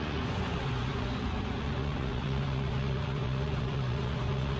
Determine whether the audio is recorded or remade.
remade